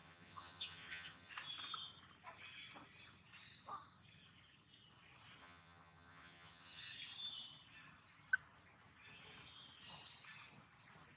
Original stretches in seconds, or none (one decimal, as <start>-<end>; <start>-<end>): 1.3-5.4; 6.8-11.2

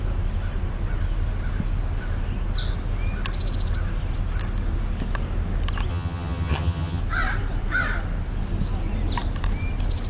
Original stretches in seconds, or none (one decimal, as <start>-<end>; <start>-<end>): 0.0-5.9; 7.0-10.1

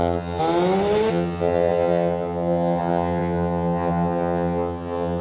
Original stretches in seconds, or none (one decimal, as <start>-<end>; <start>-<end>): 0.4-1.1